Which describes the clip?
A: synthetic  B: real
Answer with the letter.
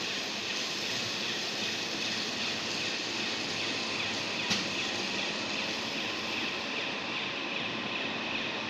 B